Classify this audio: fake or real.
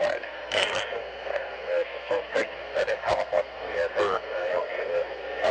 fake